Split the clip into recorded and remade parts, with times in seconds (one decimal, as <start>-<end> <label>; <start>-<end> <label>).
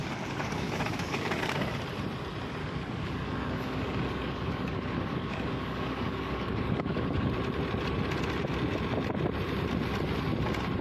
0.0-1.7 remade; 1.7-2.6 recorded; 2.6-7.3 remade; 7.3-10.8 recorded